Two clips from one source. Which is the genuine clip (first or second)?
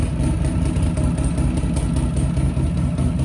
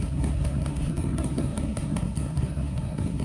first